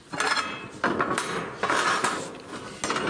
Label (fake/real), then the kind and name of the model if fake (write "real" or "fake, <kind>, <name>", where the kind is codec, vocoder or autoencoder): real